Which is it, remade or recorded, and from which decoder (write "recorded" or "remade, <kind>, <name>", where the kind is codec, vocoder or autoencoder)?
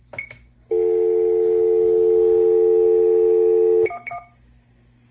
recorded